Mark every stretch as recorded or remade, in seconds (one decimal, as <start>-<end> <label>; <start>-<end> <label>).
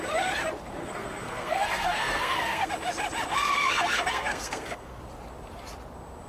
0.0-0.8 recorded; 0.8-2.7 remade; 2.7-3.3 recorded; 3.3-5.0 remade; 5.0-6.3 recorded